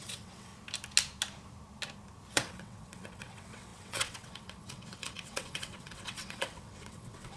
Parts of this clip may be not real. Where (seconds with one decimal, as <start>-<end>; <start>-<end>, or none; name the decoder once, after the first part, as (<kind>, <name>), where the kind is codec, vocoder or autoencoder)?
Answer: 0.0-0.5 (vocoder, WaveNeXt); 2.3-7.4

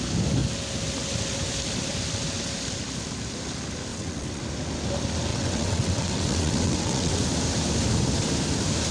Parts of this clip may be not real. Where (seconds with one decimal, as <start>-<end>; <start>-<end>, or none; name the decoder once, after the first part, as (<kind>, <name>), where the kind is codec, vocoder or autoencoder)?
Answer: 3.9-4.4 (vocoder, WaveNeXt); 5.3-7.2

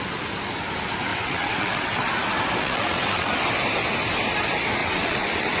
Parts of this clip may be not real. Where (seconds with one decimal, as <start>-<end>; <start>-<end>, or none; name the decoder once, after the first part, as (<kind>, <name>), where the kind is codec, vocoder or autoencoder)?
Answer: 1.1-2.1 (vocoder, WaveNeXt); 2.6-3.3; 4.8-5.6

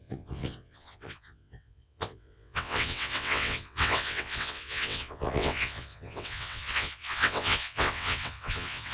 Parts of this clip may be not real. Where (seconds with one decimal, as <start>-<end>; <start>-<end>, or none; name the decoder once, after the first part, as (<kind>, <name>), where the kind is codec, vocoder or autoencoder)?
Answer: 0.0-8.9 (vocoder, WaveNeXt)

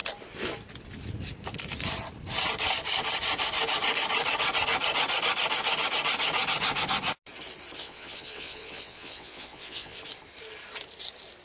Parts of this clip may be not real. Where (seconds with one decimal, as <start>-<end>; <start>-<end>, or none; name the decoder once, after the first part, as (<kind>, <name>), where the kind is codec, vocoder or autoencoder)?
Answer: 7.8-10.0 (vocoder, WaveNeXt)

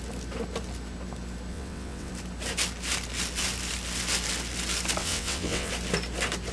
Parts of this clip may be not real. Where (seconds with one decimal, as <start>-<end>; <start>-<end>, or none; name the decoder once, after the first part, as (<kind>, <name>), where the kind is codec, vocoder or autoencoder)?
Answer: 1.5-2.1 (vocoder, WaveNeXt); 5.0-5.7

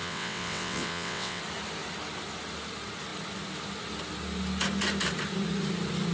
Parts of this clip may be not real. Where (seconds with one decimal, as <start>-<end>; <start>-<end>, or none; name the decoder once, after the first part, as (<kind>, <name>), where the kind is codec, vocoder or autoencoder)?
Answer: 0.0-1.4 (vocoder, WaveNeXt)

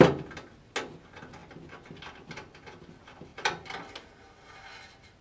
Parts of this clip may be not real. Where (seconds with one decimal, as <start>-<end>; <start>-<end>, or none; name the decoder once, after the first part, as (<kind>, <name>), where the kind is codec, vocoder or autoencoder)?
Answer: none